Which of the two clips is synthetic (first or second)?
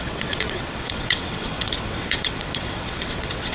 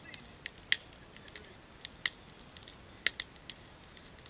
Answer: first